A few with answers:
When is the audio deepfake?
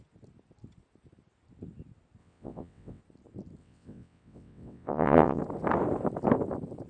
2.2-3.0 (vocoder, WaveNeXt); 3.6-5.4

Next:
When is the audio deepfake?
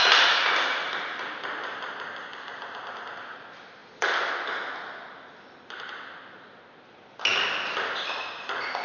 none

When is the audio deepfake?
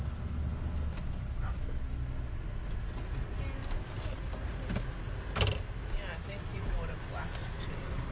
none